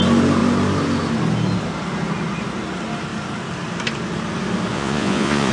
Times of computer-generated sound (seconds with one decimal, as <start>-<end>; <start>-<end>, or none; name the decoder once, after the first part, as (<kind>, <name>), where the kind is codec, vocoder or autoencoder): 4.7-5.5 (vocoder, Vocos)